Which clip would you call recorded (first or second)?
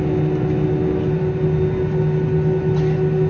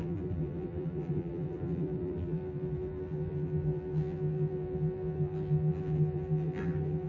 first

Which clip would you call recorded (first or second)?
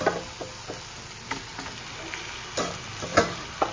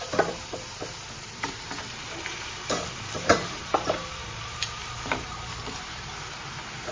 first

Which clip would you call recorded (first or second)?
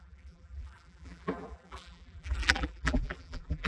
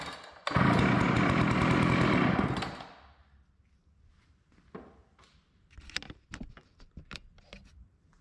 second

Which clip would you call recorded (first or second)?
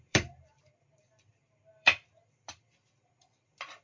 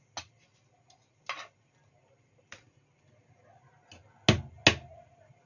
second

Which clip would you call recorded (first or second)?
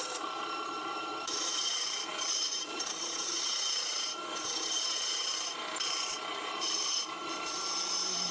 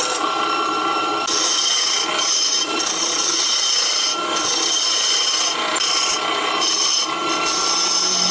second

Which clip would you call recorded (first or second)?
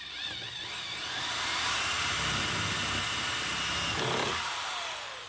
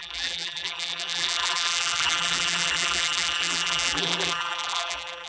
first